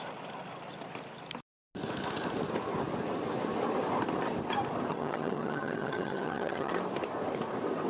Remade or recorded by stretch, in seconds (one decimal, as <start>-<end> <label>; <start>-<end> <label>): 0.0-4.9 recorded; 4.9-6.7 remade; 6.7-7.9 recorded